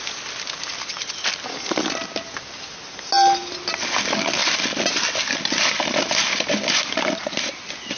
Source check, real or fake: real